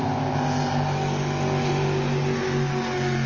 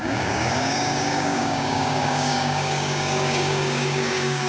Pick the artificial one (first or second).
second